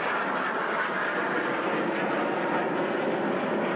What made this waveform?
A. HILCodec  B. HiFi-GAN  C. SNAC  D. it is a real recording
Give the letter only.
D